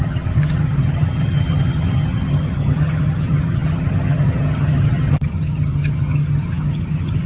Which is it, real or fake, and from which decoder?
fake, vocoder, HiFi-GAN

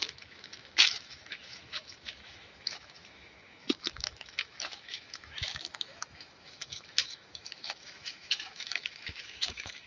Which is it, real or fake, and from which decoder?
fake, autoencoder, DAC-VAE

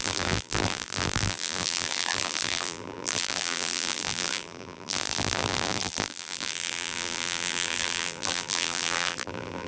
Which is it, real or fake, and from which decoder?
fake, vocoder, BigVGAN v2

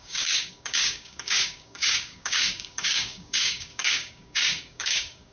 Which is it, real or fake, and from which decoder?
fake, codec, DAC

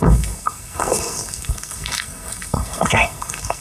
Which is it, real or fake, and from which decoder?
fake, codec, SNAC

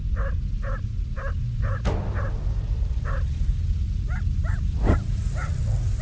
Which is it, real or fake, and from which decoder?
real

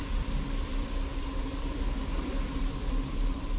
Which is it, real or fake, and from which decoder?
fake, vocoder, BigVGAN v2